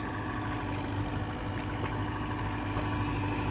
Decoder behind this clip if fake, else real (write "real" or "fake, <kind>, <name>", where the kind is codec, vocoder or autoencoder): real